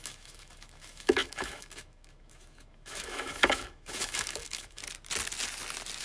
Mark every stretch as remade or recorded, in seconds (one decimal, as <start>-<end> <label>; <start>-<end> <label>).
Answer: 0.0-4.8 remade; 4.8-6.0 recorded